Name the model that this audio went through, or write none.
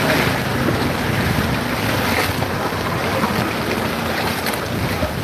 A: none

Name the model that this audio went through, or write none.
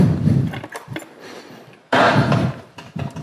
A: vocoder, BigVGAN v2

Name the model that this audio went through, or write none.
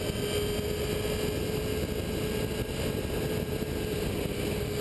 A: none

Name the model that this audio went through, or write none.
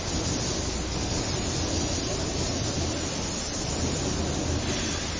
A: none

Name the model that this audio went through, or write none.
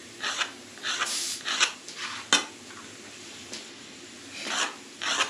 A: none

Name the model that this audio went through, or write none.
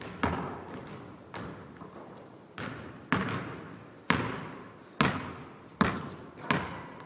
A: none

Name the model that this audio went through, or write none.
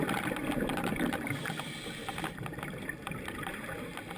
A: none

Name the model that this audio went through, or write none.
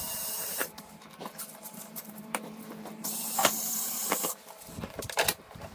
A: vocoder, BigVGAN v2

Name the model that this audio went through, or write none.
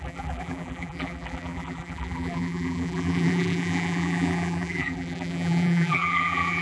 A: vocoder, BigVGAN v2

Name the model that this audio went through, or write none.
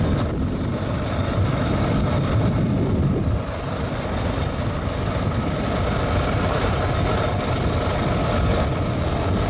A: none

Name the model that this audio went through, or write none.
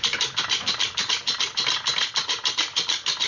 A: vocoder, BigVGAN v2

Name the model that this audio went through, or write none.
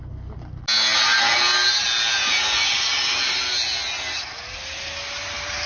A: none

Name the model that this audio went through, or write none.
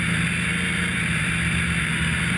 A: vocoder, BigVGAN v2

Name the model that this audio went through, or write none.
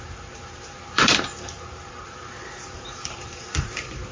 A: vocoder, BigVGAN v2